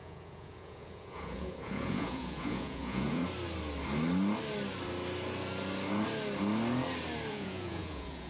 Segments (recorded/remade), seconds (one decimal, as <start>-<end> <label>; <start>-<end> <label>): 0.0-3.2 remade; 3.2-7.3 recorded; 7.3-8.3 remade